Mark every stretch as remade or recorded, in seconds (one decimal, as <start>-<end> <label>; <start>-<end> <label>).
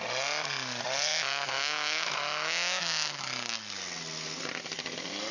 0.0-1.1 recorded; 1.1-3.2 remade; 3.2-5.3 recorded